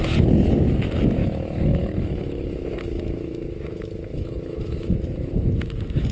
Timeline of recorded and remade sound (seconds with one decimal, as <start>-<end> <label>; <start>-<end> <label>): 0.0-1.2 recorded; 1.2-4.9 remade; 4.9-6.1 recorded